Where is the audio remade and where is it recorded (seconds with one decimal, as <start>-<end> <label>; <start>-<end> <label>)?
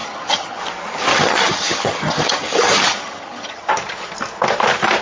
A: 0.0-0.6 remade; 0.6-1.1 recorded; 1.1-3.7 remade; 3.7-5.0 recorded